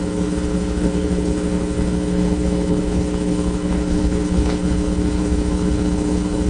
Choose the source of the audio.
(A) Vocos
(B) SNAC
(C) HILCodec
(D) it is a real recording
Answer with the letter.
C